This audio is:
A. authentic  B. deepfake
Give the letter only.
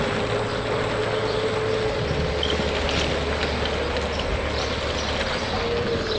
A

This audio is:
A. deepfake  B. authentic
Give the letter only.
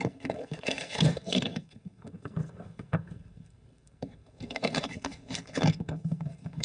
A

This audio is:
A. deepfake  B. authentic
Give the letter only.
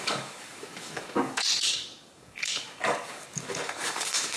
A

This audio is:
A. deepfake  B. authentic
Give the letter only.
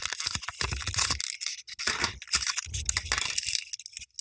B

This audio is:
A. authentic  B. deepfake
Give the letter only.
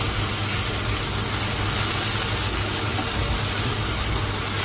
A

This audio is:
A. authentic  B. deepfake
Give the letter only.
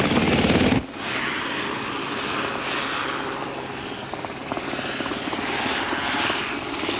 A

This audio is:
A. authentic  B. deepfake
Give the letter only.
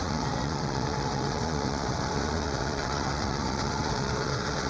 B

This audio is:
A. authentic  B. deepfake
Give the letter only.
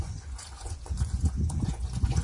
B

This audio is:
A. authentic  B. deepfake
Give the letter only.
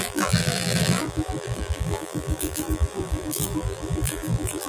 B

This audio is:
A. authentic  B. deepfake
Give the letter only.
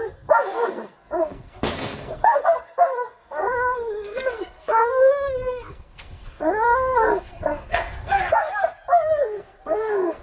B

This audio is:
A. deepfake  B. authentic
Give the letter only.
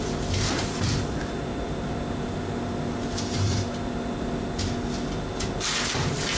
B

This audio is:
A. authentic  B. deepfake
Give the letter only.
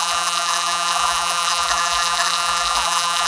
B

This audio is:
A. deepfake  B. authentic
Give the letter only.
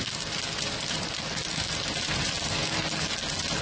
B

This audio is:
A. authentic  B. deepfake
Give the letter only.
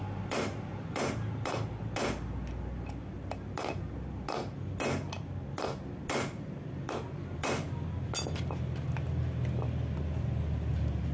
A